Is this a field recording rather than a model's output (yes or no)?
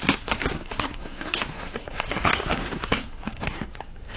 no